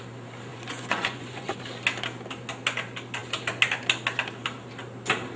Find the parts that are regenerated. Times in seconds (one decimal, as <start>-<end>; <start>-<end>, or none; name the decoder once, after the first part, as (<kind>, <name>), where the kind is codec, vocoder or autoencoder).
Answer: 0.5-1.6 (vocoder, Vocos)